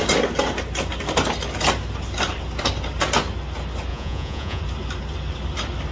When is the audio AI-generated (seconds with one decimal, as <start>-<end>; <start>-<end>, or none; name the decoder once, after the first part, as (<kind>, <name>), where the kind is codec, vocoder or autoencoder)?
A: 3.9-4.6 (vocoder, Vocos)